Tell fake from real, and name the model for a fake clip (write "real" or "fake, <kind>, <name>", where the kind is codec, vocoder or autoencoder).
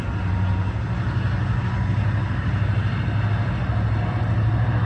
real